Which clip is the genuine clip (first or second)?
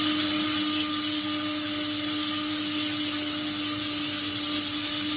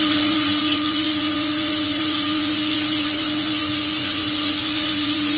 first